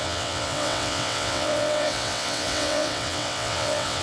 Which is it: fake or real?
fake